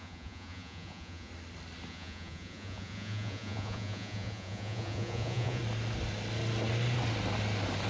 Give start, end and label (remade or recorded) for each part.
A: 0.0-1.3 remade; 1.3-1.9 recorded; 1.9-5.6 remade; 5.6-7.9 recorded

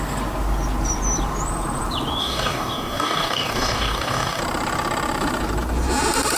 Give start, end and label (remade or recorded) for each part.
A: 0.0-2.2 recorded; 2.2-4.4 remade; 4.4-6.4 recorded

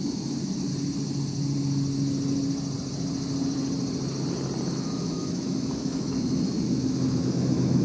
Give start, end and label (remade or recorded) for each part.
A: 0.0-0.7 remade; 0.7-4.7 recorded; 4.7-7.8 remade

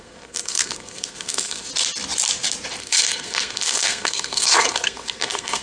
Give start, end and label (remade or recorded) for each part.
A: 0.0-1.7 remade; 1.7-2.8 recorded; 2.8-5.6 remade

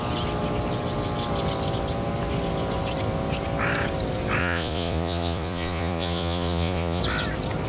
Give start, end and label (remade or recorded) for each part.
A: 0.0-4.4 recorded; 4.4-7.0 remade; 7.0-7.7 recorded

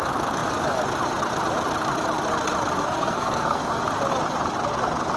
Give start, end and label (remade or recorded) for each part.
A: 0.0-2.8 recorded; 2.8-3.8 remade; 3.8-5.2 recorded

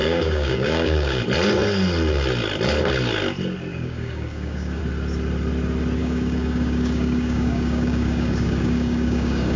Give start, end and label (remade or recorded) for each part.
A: 0.0-1.2 remade; 1.2-3.7 recorded; 3.7-4.8 remade; 4.8-6.0 recorded; 6.0-9.6 remade